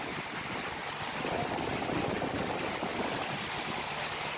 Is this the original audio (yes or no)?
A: yes